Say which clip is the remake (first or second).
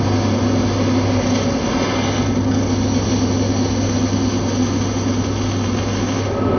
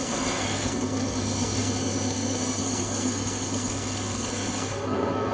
second